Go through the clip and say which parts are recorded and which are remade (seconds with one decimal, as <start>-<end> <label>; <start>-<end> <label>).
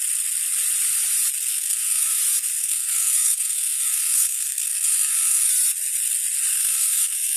0.0-1.5 recorded; 1.5-2.2 remade; 2.2-2.6 recorded; 2.6-5.5 remade; 5.5-6.5 recorded; 6.5-7.4 remade